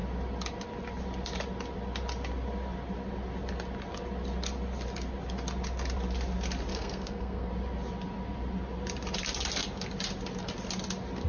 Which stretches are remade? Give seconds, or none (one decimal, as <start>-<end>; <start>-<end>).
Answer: 6.7-7.5